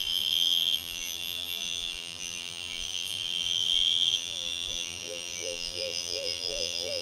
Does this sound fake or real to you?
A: fake